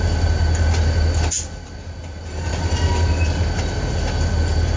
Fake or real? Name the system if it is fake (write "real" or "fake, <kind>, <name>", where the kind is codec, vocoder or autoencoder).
real